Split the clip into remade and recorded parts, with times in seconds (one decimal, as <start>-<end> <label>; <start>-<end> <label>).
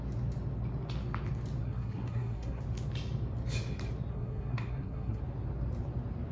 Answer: 0.0-1.6 recorded; 1.6-2.6 remade; 2.6-4.1 recorded; 4.1-5.2 remade; 5.2-6.3 recorded